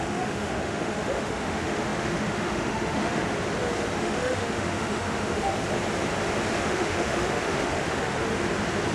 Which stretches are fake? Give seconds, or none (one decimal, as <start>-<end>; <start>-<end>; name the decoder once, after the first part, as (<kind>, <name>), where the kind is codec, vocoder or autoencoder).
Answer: 0.0-3.2 (autoencoder, DAC-VAE); 4.0-5.5; 6.5-8.2